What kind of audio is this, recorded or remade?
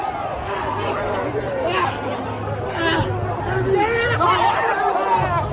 recorded